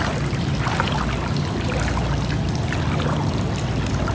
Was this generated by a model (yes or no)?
no